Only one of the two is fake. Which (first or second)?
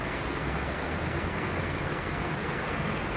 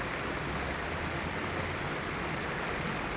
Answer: first